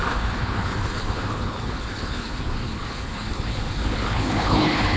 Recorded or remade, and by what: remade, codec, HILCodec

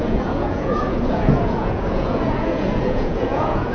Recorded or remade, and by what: remade, vocoder, Vocos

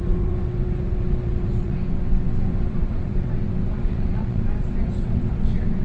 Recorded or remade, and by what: remade, vocoder, WaveNeXt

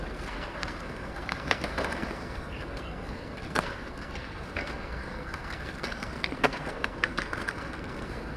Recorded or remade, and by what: remade, codec, SNAC